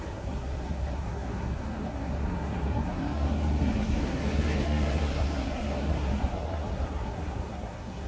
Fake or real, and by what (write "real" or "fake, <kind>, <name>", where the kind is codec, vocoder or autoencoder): fake, codec, SNAC